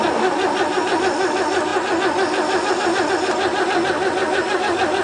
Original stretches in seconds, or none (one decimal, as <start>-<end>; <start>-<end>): 0.0-5.0